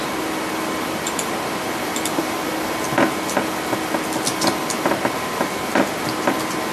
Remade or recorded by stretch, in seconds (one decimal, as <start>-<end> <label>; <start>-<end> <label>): 0.0-6.7 recorded